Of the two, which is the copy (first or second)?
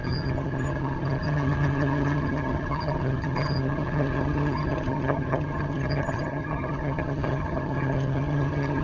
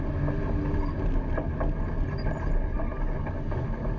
first